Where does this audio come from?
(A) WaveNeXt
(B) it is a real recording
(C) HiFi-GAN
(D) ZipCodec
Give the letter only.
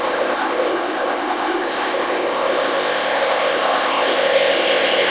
D